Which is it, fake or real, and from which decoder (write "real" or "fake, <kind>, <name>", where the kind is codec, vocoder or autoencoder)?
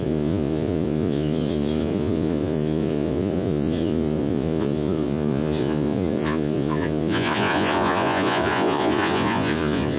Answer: fake, vocoder, Vocos